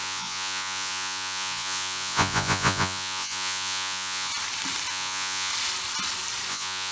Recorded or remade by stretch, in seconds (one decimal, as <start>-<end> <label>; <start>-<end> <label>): 0.0-4.3 remade; 4.3-4.9 recorded; 4.9-5.5 remade; 5.5-6.5 recorded; 6.5-6.9 remade